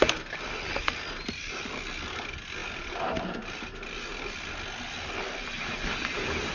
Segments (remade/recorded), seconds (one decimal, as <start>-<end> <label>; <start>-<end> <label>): 0.0-2.6 recorded; 2.6-3.4 remade; 3.4-6.5 recorded